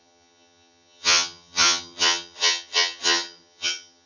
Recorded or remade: remade